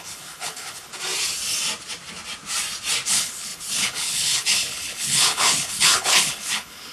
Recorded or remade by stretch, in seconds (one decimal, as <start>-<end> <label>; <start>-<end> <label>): 0.0-0.9 remade; 0.9-3.1 recorded; 3.1-6.9 remade